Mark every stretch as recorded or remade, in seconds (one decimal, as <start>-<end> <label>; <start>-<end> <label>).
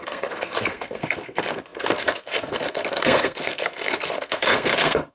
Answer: 0.0-5.1 remade